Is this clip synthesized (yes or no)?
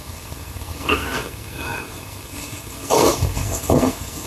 yes